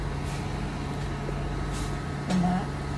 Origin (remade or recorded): recorded